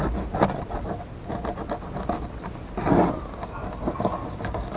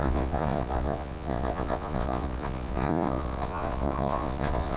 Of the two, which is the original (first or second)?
first